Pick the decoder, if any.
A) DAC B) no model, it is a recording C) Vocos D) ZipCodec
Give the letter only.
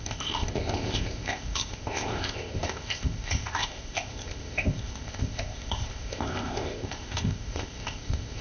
D